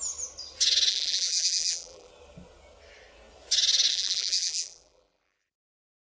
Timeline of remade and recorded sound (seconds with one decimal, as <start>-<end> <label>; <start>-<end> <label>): 0.0-0.9 recorded; 0.9-2.1 remade; 2.1-3.9 recorded; 3.9-5.6 remade; 5.6-6.0 recorded